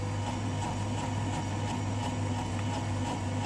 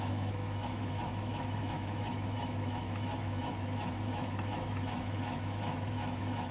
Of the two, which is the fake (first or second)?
second